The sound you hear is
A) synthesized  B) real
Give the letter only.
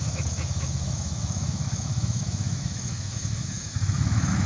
A